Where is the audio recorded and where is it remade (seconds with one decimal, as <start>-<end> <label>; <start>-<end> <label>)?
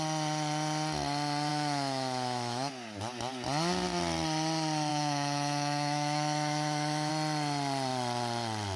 0.0-1.5 recorded; 1.5-2.7 remade; 2.7-4.9 recorded; 4.9-7.1 remade; 7.1-8.8 recorded